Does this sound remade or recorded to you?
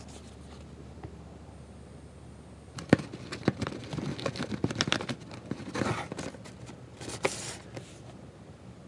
recorded